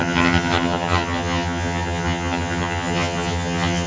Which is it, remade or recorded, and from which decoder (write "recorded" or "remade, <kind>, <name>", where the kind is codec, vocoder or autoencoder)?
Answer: remade, vocoder, HiFi-GAN